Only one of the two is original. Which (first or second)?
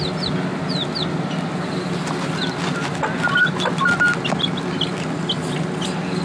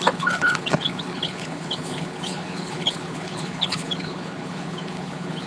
first